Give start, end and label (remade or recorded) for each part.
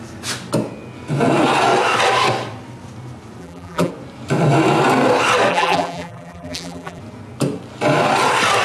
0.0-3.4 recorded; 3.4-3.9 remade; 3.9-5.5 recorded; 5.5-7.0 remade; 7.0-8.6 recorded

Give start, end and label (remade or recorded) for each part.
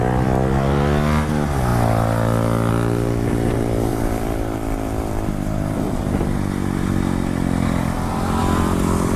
0.0-3.9 recorded; 3.9-6.0 remade; 6.0-8.4 recorded; 8.4-9.2 remade